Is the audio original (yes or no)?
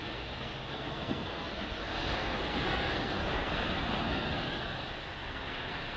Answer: no